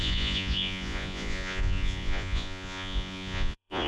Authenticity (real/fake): fake